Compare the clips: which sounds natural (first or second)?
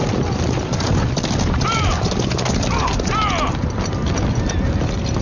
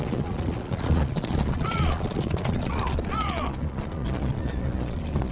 first